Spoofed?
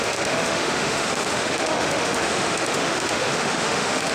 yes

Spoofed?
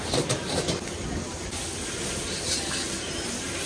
no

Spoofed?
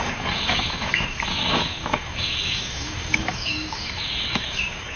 yes